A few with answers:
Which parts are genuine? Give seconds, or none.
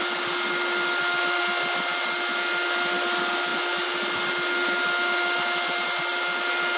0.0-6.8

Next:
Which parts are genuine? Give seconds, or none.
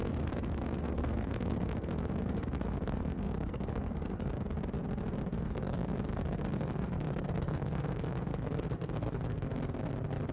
4.3-5.3; 9.5-10.3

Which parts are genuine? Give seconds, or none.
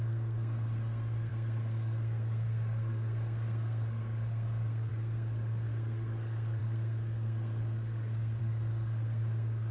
none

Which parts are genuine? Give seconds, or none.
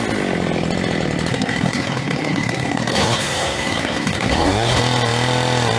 0.0-1.3; 4.8-5.8